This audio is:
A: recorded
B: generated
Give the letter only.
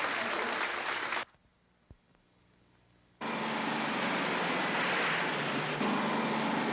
A